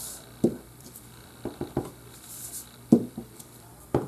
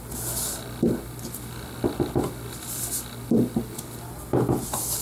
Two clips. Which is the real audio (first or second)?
second